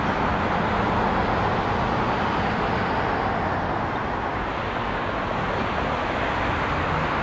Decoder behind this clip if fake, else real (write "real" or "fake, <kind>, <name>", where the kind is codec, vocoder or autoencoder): real